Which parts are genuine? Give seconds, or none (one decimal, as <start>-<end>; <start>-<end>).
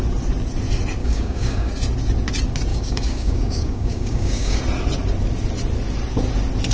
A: 0.0-1.0; 1.7-2.7; 4.6-6.7